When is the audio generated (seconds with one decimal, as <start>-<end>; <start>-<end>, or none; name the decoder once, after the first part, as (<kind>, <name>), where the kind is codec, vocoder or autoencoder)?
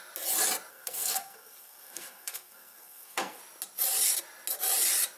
0.7-3.4 (codec, SNAC)